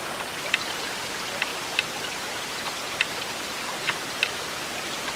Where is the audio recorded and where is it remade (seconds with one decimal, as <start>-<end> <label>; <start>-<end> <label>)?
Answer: 0.0-5.2 recorded